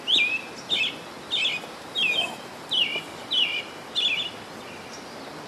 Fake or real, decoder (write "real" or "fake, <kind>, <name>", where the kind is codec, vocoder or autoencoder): real